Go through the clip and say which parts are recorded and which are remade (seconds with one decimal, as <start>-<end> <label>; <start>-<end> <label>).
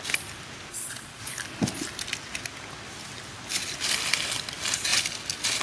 0.0-0.7 recorded; 0.7-1.2 remade; 1.2-5.6 recorded